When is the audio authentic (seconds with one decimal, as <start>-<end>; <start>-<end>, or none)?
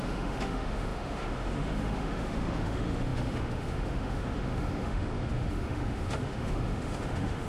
none